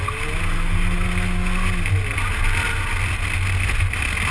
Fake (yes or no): no